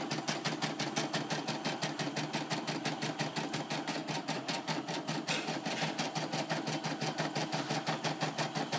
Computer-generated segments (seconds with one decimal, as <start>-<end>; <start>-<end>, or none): none